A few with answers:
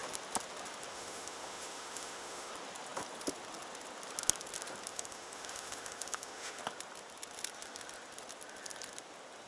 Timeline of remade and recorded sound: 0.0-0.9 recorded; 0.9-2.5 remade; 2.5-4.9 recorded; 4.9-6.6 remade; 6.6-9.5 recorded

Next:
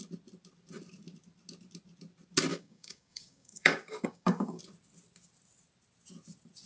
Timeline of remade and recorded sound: 0.0-2.5 recorded; 2.5-4.6 remade; 4.6-6.7 recorded

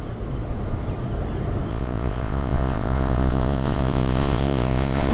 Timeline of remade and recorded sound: 0.0-1.7 recorded; 1.7-5.1 remade

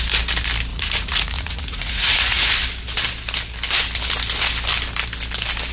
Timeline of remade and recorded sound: 0.0-0.7 recorded; 0.7-2.5 remade; 2.5-5.7 recorded

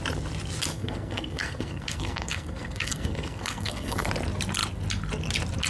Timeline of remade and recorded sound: 0.0-0.7 recorded; 0.7-4.1 remade; 4.1-5.7 recorded

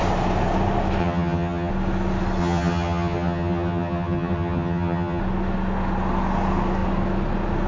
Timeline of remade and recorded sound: 0.0-1.0 recorded; 1.0-1.7 remade; 1.7-2.4 recorded; 2.4-5.2 remade; 5.2-7.7 recorded

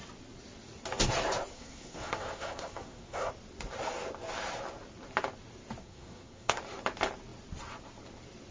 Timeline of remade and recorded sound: 0.0-1.5 recorded; 1.5-3.3 remade; 3.3-5.8 recorded; 5.8-6.6 remade; 6.6-8.5 recorded